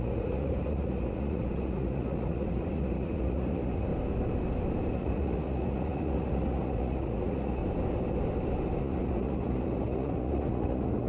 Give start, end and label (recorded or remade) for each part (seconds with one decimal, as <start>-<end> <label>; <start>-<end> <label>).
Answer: 0.0-3.9 remade; 3.9-4.9 recorded; 4.9-7.6 remade; 7.6-8.8 recorded; 8.8-11.1 remade